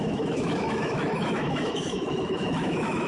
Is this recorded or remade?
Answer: remade